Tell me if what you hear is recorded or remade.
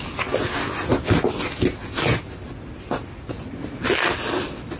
recorded